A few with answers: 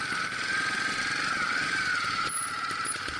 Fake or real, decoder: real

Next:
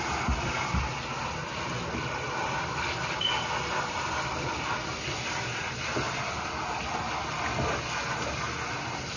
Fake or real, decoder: real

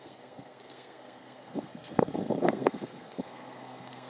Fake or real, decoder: fake, codec, SNAC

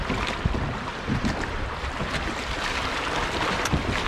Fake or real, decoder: real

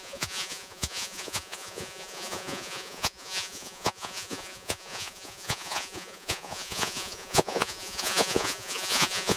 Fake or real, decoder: fake, vocoder, Vocos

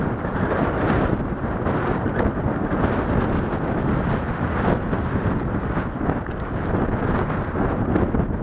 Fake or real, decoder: real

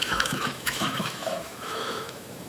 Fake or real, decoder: fake, autoencoder, DAC-VAE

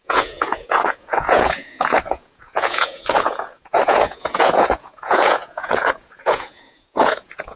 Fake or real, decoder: fake, vocoder, Vocos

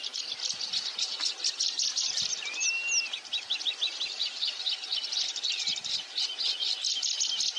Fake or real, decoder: real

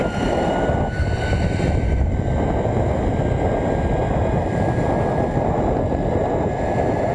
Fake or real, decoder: real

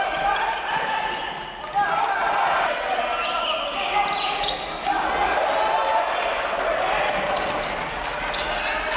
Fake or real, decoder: real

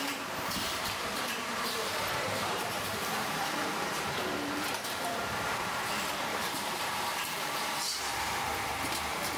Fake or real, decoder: fake, vocoder, BigVGAN v2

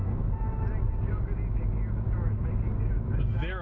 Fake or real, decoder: real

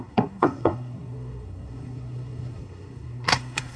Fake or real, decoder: fake, codec, SNAC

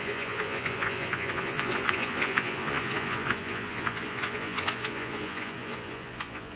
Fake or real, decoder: fake, vocoder, Vocos